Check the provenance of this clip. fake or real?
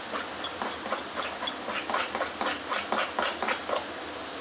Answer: real